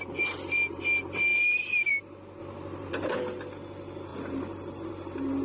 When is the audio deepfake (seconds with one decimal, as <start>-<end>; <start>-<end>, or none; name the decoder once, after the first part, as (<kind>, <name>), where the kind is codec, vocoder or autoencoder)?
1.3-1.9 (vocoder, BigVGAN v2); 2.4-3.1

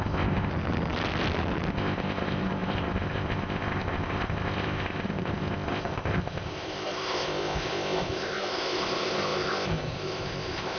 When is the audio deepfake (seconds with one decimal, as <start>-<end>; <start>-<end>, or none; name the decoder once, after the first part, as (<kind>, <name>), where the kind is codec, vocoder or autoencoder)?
0.0-0.5 (codec, ZipCodec); 1.7-10.8

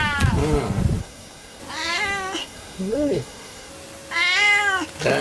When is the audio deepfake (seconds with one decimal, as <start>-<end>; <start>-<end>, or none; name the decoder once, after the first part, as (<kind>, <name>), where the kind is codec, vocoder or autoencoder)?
1.0-1.6 (codec, SNAC); 2.4-3.7